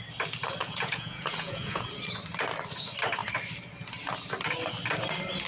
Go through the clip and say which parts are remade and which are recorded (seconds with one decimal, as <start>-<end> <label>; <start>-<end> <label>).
0.0-0.6 recorded; 0.6-1.8 remade; 1.8-5.5 recorded